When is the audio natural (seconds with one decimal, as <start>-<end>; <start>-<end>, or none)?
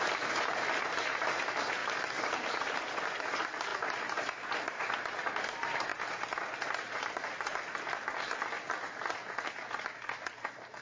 5.9-6.6; 7.5-10.8